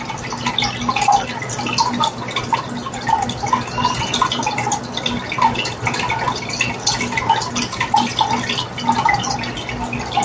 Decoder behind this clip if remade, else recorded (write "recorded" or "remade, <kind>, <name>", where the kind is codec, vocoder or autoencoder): recorded